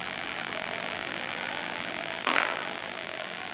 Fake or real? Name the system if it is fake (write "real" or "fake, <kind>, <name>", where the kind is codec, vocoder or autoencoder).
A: fake, vocoder, BigVGAN v2